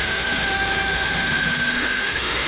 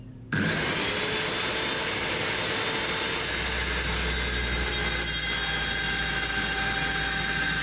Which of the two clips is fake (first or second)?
first